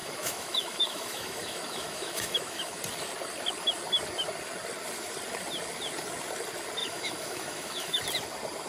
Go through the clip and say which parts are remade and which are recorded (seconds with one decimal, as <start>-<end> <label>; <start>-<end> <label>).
0.0-2.8 remade; 2.8-6.8 recorded; 6.8-8.0 remade; 8.0-8.7 recorded